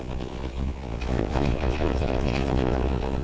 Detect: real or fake fake